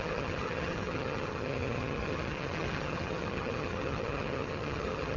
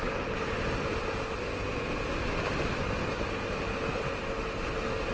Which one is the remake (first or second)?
first